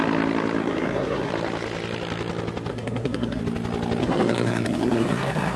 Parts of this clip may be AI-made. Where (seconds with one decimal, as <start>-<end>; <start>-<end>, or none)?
0.6-1.3; 2.7-3.4; 4.0-5.6